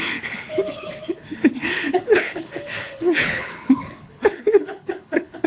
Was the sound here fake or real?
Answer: fake